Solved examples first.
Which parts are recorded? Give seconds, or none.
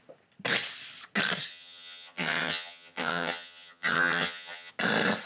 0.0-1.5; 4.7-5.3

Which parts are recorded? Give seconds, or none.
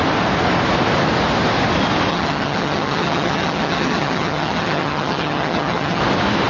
0.0-2.1; 6.0-6.5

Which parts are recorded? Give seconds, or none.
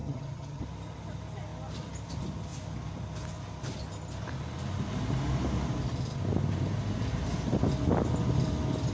0.6-8.9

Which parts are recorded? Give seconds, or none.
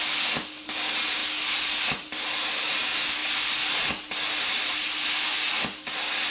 0.0-6.3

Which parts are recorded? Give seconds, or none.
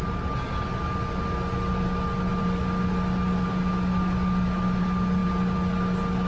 0.0-6.3